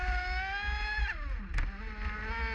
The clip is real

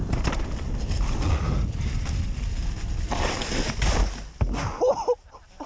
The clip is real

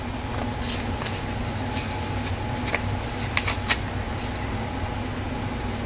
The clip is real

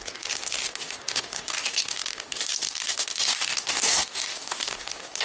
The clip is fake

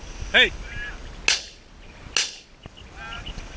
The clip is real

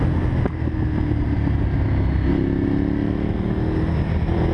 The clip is real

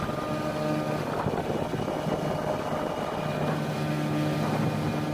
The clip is real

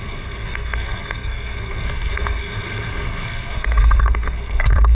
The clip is fake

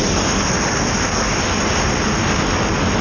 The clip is real